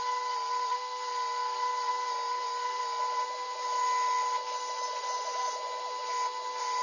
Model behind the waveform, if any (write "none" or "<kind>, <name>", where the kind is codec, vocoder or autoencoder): none